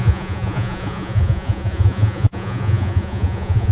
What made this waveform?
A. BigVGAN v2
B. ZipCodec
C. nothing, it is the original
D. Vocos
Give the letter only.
D